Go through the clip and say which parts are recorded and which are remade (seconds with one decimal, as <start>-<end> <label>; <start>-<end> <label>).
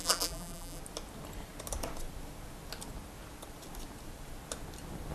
0.0-0.8 remade; 0.8-5.1 recorded